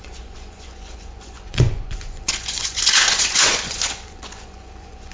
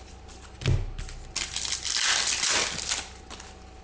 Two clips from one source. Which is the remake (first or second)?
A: first